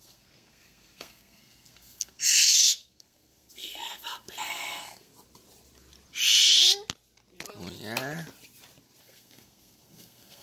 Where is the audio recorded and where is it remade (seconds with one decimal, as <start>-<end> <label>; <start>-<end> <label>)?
0.0-5.1 remade; 5.1-9.0 recorded; 9.0-10.4 remade